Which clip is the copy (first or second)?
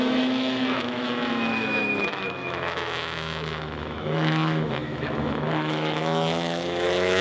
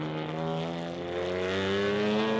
first